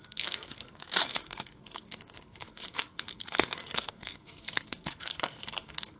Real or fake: fake